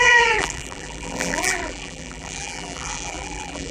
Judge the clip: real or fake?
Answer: fake